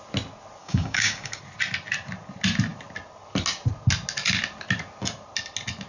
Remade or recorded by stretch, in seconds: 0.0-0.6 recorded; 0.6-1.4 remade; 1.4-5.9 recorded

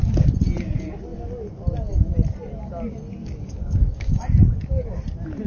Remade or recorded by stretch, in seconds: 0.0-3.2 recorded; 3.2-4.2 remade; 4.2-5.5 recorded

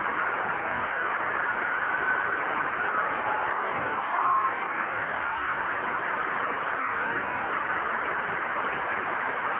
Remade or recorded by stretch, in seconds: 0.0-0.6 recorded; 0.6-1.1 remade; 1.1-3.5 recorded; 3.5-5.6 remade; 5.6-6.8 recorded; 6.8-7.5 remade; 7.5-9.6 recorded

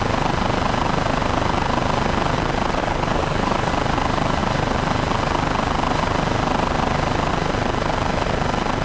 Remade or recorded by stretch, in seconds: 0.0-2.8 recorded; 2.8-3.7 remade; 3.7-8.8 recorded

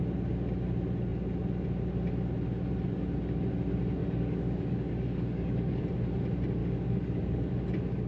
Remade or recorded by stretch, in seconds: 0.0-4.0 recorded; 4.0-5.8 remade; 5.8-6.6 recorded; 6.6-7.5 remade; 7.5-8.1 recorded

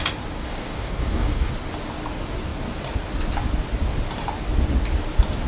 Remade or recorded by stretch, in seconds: 0.0-0.4 recorded; 0.4-1.5 remade; 1.5-5.5 recorded

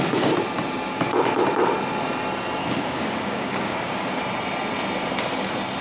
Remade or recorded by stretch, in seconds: 0.0-2.6 recorded; 2.6-4.2 remade; 4.2-5.8 recorded